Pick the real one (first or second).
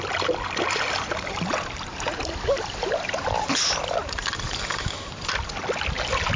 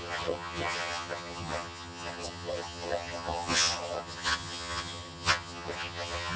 first